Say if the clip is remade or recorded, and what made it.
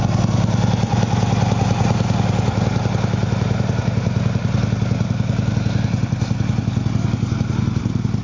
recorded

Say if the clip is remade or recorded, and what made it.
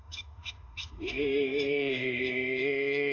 remade, autoencoder, DAC-VAE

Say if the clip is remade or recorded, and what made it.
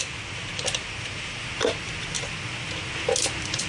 recorded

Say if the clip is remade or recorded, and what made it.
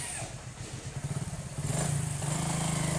recorded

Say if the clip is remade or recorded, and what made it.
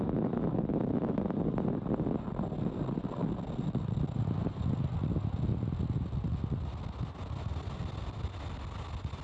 recorded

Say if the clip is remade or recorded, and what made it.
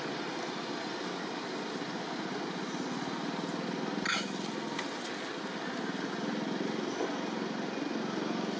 recorded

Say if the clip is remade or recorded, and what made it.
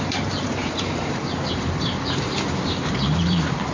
remade, vocoder, BigVGAN v2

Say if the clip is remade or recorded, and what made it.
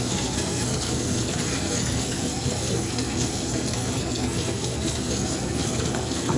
remade, codec, SNAC